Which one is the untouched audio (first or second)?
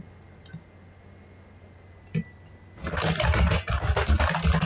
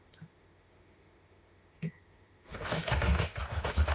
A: first